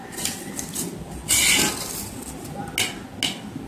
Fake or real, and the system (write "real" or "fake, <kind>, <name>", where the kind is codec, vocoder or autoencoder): real